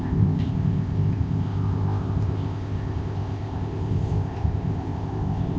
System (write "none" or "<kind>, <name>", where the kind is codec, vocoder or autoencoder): codec, ZipCodec